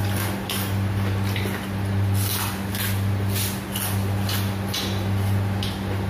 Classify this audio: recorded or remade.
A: recorded